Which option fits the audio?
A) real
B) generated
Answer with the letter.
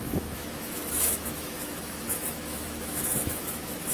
B